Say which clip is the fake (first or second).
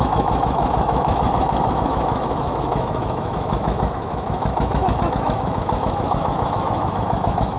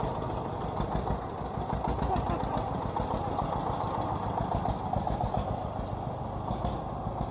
first